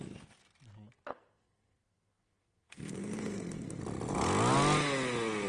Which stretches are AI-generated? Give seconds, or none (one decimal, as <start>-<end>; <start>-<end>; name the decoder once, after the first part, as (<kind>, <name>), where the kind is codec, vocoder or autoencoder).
1.1-3.8 (codec, SNAC)